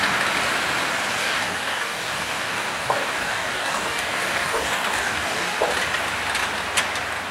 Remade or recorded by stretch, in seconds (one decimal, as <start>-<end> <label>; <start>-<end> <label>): 0.0-1.2 recorded; 1.2-5.6 remade; 5.6-7.3 recorded